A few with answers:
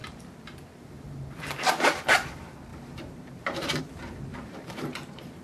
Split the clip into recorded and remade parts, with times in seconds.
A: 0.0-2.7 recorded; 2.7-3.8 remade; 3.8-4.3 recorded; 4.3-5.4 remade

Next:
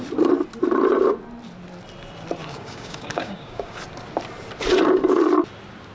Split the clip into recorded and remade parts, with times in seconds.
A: 0.0-2.4 recorded; 2.4-3.8 remade; 3.8-5.9 recorded

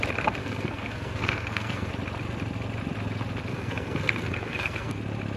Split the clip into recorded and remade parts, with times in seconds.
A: 0.0-0.4 recorded; 0.4-1.9 remade; 1.9-3.5 recorded; 3.5-5.0 remade; 5.0-5.4 recorded

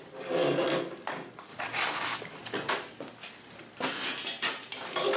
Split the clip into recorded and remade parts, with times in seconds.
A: 0.0-0.4 remade; 0.4-0.9 recorded; 0.9-1.5 remade; 1.5-2.7 recorded; 2.7-5.2 remade

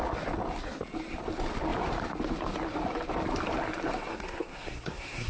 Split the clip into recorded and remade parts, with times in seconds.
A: 0.0-4.1 recorded; 4.1-5.3 remade

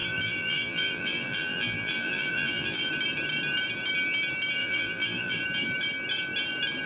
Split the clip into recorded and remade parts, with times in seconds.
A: 0.0-2.9 remade; 2.9-4.6 recorded; 4.6-5.4 remade; 5.4-6.9 recorded

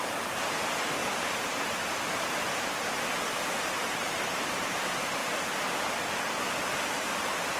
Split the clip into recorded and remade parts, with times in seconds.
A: 0.0-5.2 remade; 5.2-6.1 recorded; 6.1-7.6 remade